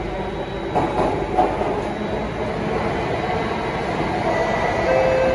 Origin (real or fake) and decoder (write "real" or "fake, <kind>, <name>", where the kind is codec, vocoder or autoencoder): real